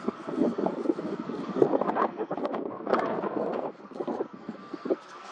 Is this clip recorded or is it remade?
remade